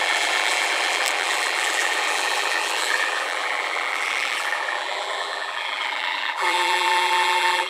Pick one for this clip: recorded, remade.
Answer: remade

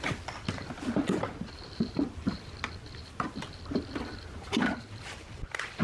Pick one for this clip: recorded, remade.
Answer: remade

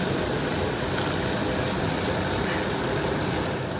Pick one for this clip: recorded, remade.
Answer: recorded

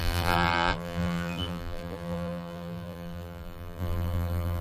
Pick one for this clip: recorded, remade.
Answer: remade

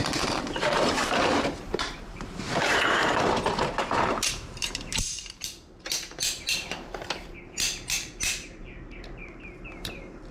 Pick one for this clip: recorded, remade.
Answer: remade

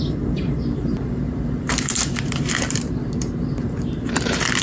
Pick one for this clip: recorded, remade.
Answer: remade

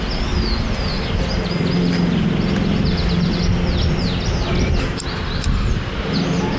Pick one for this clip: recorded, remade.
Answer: recorded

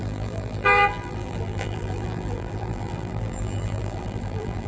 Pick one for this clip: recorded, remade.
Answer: remade